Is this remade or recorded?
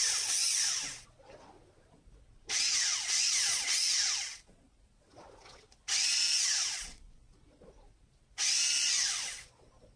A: remade